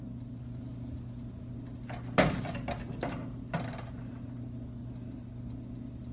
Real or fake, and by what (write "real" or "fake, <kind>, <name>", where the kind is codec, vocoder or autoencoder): real